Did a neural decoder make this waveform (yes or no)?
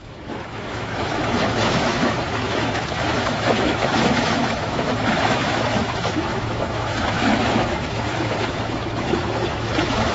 yes